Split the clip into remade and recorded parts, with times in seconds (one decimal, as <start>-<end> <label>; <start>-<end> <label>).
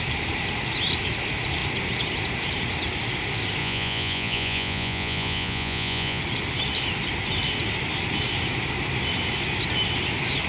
0.0-3.6 recorded; 3.6-6.2 remade; 6.2-10.5 recorded